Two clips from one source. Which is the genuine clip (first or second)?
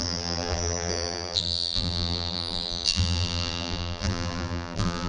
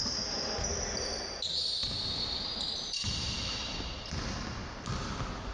second